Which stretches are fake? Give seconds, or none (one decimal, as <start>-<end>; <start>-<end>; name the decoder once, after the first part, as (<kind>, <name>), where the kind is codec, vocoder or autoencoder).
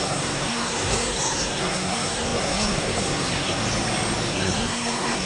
0.0-3.6 (codec, SNAC); 4.3-5.3